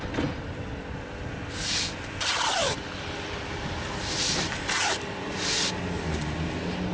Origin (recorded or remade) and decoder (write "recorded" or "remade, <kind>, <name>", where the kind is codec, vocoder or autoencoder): recorded